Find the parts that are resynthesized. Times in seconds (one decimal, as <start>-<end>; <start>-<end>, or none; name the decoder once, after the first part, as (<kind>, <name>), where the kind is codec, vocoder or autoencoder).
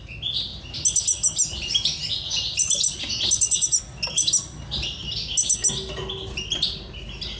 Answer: none